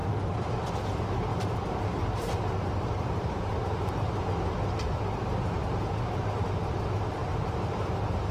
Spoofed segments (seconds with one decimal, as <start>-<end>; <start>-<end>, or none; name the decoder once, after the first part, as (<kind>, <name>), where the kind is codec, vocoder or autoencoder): 1.3-4.3 (vocoder, BigVGAN v2); 5.6-6.7; 7.2-7.9